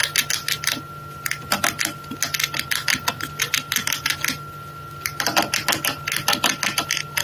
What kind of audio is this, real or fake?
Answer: real